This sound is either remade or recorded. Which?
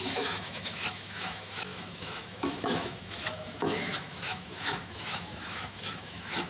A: remade